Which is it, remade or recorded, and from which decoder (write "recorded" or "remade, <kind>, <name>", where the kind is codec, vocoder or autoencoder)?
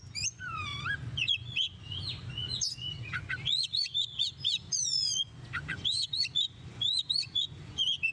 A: remade, vocoder, Vocos